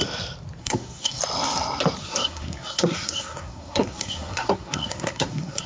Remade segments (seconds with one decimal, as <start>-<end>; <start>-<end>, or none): 0.6-1.2; 2.0-5.7